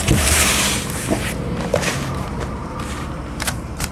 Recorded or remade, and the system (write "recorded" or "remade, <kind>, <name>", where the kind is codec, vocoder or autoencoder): remade, vocoder, BigVGAN v2